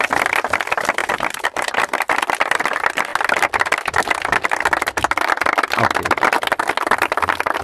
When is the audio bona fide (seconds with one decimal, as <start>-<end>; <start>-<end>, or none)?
0.0-1.0; 2.2-7.6